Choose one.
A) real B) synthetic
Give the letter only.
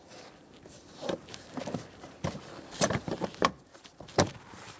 B